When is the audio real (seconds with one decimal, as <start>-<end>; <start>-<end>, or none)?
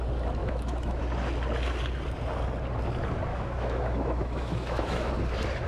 0.0-0.4; 1.0-3.3; 5.1-5.7